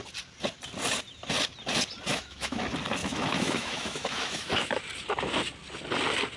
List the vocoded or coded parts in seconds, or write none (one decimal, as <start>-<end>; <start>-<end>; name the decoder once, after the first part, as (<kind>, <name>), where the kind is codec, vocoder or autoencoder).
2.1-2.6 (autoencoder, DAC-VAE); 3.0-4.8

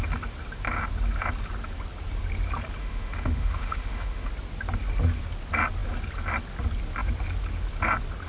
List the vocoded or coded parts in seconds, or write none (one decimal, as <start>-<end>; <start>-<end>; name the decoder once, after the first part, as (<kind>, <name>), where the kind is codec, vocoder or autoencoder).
2.8-4.3 (autoencoder, DAC-VAE)

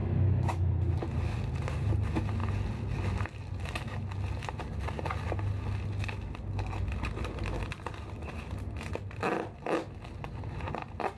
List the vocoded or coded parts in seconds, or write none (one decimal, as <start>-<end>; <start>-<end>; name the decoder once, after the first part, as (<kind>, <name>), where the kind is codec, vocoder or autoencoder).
0.0-0.7 (autoencoder, DAC-VAE)